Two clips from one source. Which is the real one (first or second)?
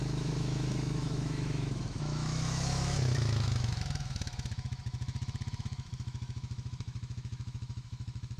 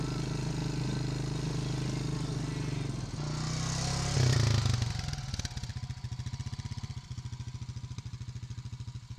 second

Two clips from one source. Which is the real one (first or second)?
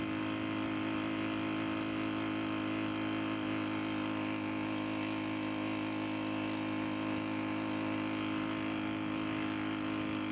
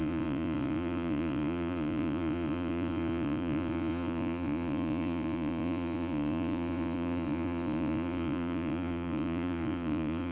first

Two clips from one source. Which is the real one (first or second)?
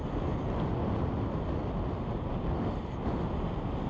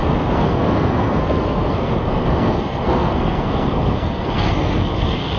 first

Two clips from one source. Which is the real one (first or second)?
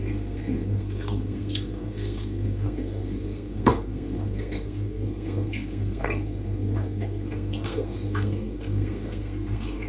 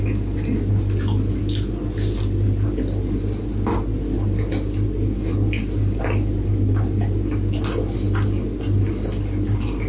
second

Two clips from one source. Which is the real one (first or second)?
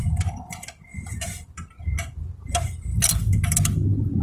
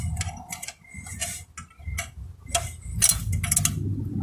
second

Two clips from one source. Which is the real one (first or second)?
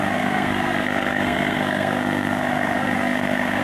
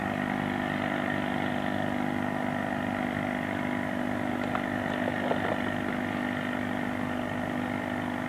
second